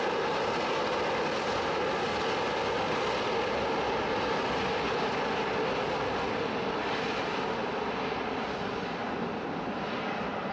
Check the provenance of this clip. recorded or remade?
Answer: recorded